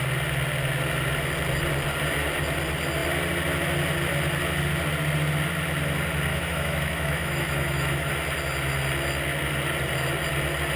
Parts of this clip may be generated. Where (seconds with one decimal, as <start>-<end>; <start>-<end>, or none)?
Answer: 6.3-8.1